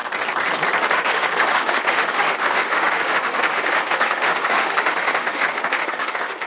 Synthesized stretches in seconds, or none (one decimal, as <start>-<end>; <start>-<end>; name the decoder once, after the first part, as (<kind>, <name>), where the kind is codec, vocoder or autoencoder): 0.9-6.5 (autoencoder, DAC-VAE)